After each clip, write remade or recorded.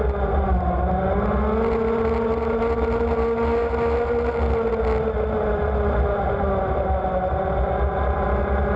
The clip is recorded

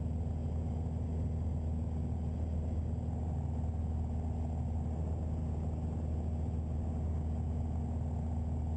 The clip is recorded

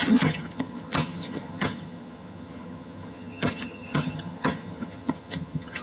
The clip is remade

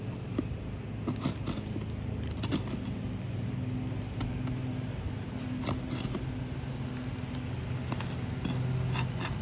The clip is recorded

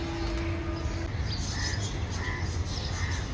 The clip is recorded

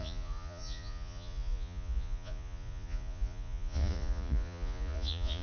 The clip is remade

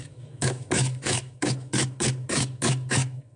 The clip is remade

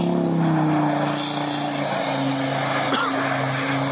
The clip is recorded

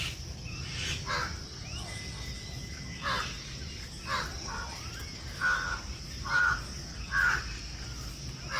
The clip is recorded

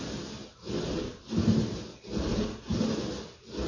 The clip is recorded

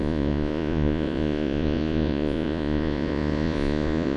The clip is remade